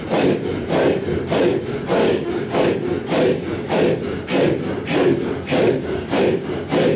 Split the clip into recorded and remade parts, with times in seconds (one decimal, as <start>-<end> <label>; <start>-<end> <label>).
0.0-2.0 recorded; 2.0-2.7 remade; 2.7-5.5 recorded; 5.5-6.2 remade; 6.2-7.0 recorded